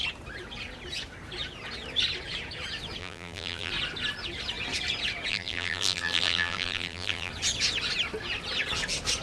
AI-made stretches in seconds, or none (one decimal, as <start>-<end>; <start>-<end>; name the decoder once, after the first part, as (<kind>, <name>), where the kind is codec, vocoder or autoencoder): 3.0-3.7 (vocoder, BigVGAN v2); 5.3-7.3